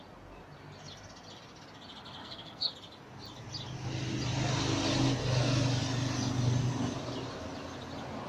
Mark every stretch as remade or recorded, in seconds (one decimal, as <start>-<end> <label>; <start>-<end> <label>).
0.0-2.2 recorded; 2.2-2.7 remade; 2.7-8.3 recorded